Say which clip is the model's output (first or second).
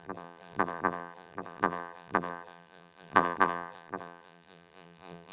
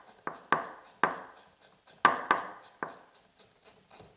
first